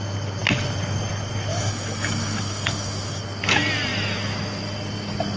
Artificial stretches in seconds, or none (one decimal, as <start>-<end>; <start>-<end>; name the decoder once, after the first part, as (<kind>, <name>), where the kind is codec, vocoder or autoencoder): 1.5-3.2 (autoencoder, DAC-VAE)